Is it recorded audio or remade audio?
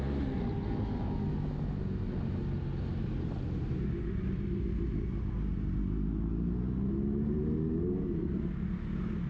recorded